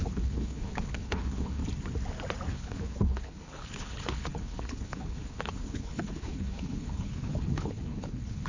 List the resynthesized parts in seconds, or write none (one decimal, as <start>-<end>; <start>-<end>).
0.0-1.6; 2.5-8.5